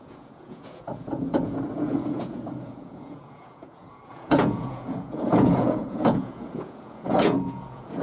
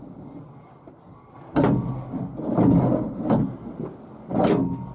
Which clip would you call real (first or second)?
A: second